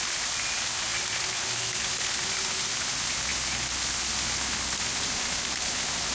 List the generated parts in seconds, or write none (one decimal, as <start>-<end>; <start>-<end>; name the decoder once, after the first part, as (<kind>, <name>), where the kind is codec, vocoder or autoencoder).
none